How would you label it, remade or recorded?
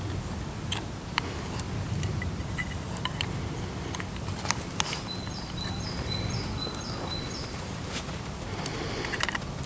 recorded